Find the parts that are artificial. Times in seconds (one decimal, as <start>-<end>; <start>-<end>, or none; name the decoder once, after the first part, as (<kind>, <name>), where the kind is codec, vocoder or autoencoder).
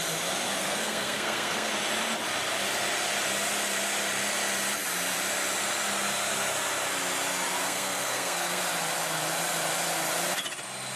0.6-1.7 (codec, SNAC); 7.6-8.6